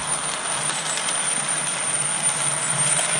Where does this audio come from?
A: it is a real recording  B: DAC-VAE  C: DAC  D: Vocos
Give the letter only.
A